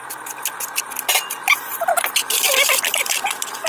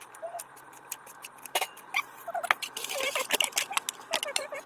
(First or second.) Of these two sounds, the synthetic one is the second